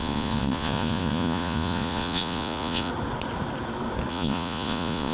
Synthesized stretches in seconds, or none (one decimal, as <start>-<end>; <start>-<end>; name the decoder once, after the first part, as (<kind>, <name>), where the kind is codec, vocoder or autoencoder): 0.0-2.9 (vocoder, Vocos); 4.1-5.1